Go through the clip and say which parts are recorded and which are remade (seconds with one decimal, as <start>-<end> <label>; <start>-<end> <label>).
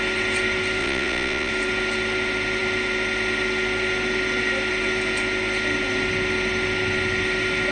0.0-0.8 recorded; 0.8-1.5 remade; 1.5-7.7 recorded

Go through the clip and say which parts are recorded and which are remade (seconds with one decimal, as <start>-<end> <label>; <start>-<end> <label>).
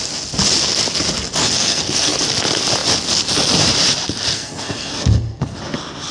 0.0-1.4 recorded; 1.4-2.2 remade; 2.2-4.3 recorded; 4.3-5.6 remade; 5.6-6.1 recorded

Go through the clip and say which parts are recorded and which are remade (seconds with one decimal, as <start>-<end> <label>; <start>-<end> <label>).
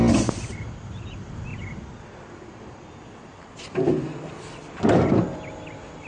0.0-6.1 recorded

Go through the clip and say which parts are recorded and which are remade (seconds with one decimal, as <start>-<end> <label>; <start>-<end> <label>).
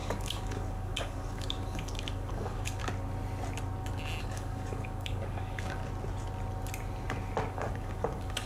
0.0-2.8 remade; 2.8-4.2 recorded; 4.2-5.8 remade; 5.8-7.5 recorded; 7.5-8.5 remade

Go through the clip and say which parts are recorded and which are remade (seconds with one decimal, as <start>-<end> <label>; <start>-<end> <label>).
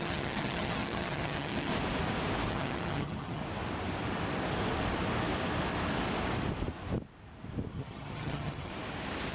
0.0-1.7 remade; 1.7-2.5 recorded; 2.5-3.4 remade; 3.4-7.7 recorded; 7.7-8.7 remade; 8.7-9.3 recorded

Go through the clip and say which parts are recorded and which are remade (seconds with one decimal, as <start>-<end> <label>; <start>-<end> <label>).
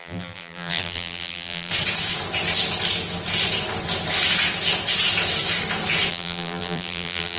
0.0-1.7 remade; 1.7-6.1 recorded; 6.1-7.4 remade